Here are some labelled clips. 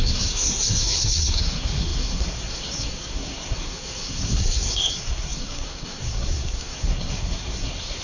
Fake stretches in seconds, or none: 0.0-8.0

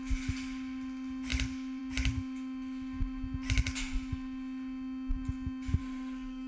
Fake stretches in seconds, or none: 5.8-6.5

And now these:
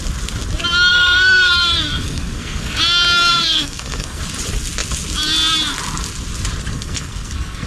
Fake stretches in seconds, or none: 0.9-2.8; 3.3-4.2; 6.7-7.7

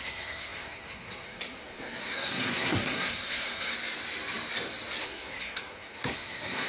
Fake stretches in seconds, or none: 0.0-3.7; 5.0-6.7

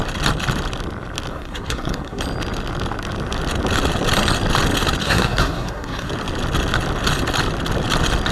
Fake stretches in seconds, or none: 1.3-2.2; 5.0-6.1